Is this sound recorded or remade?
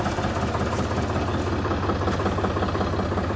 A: recorded